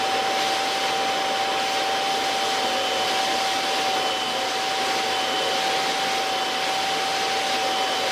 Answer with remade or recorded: recorded